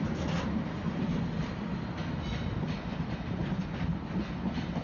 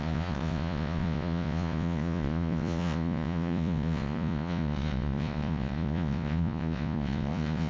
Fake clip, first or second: second